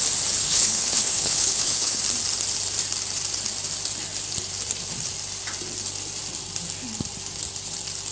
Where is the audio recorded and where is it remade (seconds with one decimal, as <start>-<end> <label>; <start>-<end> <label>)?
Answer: 0.0-0.4 recorded; 0.4-2.0 remade; 2.0-8.1 recorded